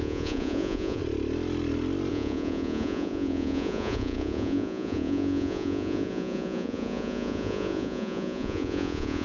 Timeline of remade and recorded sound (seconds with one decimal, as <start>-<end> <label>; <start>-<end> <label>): 0.0-1.0 remade; 1.0-2.1 recorded; 2.1-9.2 remade